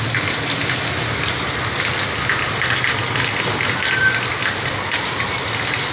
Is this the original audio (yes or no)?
yes